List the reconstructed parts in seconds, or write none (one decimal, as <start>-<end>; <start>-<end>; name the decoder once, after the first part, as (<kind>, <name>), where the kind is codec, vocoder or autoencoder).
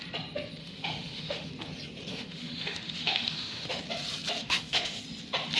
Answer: 0.6-1.5 (autoencoder, DAC-VAE); 2.1-3.8; 4.4-5.0